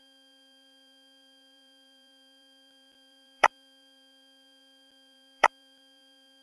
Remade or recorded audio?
remade